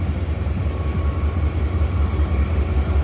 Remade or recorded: remade